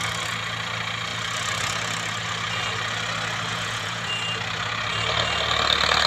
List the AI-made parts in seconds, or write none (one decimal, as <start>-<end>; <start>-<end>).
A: 3.5-4.1